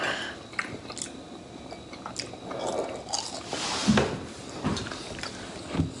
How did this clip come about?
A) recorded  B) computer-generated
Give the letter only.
A